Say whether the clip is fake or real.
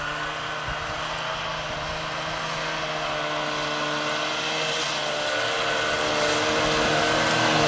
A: real